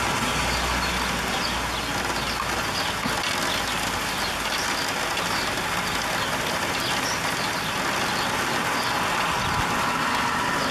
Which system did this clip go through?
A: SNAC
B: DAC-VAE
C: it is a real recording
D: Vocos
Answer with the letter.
C